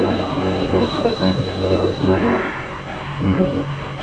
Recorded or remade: remade